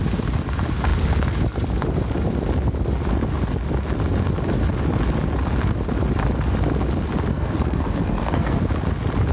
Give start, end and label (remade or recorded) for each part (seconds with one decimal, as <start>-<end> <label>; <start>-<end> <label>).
0.0-7.3 recorded; 7.3-8.6 remade; 8.6-9.3 recorded